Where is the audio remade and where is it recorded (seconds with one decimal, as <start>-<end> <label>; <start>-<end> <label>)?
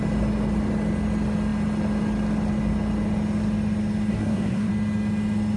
0.0-4.1 recorded; 4.1-4.7 remade; 4.7-5.6 recorded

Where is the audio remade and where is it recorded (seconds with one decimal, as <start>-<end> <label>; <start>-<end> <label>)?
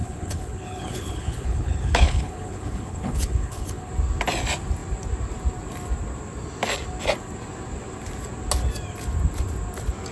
0.0-3.9 remade; 3.9-10.1 recorded